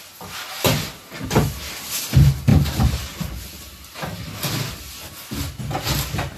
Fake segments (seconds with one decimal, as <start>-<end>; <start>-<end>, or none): none